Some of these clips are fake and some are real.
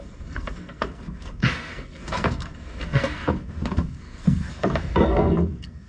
fake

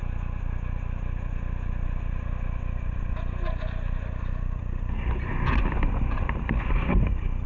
real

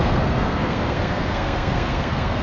fake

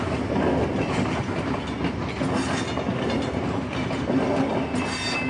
real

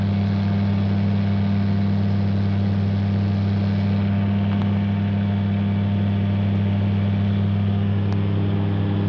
real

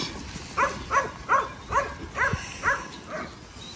real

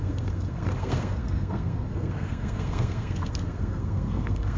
fake